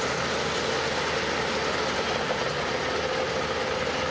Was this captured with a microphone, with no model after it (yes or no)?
yes